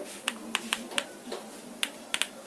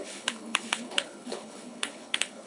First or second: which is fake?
second